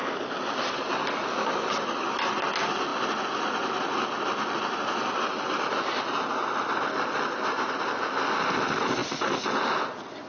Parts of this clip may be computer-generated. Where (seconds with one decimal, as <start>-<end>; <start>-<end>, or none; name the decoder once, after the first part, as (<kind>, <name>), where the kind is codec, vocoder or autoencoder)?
none